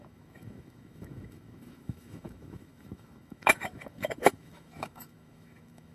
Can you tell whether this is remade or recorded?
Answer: remade